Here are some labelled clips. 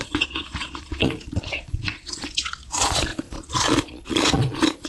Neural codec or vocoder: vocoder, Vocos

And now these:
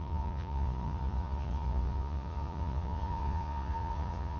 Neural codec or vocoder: vocoder, Vocos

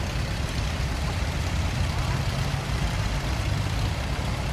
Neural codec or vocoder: vocoder, BigVGAN v2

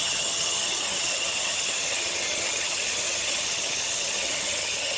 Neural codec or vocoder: vocoder, HiFi-GAN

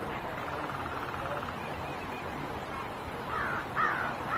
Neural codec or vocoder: vocoder, BigVGAN v2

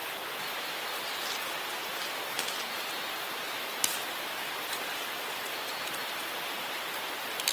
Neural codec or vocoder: none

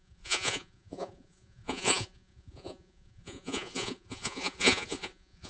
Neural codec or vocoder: vocoder, Vocos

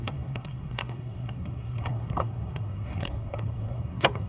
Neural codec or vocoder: codec, SNAC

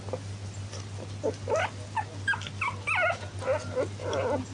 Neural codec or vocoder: none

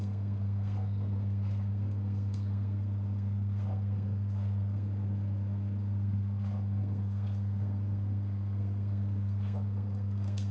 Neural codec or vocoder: codec, SNAC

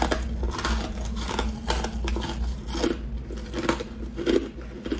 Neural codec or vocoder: none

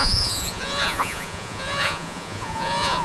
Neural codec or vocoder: vocoder, Vocos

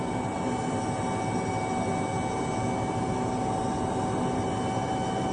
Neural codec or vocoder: none